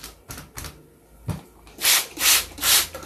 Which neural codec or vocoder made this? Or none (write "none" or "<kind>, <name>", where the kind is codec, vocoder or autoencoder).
none